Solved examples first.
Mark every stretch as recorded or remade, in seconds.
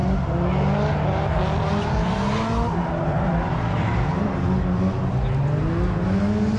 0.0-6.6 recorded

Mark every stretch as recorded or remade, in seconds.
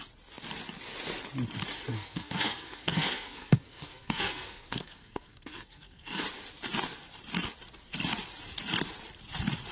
0.0-1.9 recorded; 1.9-6.2 remade; 6.2-9.7 recorded